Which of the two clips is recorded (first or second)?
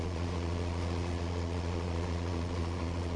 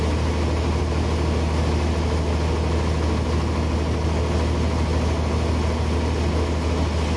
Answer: second